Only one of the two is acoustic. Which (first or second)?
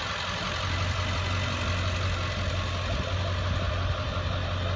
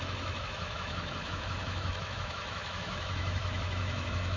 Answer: first